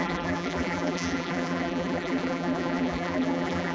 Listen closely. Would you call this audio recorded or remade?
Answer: remade